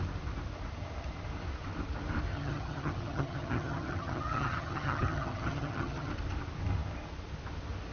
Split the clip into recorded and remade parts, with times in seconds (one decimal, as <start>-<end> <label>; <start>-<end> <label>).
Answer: 0.0-2.3 recorded; 2.3-6.1 remade; 6.1-7.9 recorded